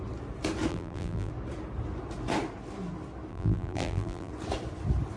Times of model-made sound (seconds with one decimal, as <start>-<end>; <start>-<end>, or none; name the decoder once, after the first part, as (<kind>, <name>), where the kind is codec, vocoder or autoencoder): 0.7-1.3 (vocoder, BigVGAN v2); 3.3-4.3